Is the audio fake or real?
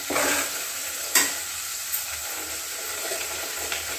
fake